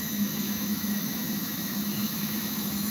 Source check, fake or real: fake